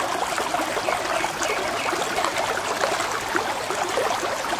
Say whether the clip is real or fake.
real